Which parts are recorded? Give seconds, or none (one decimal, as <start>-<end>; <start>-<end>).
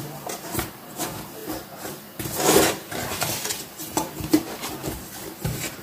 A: 1.4-3.5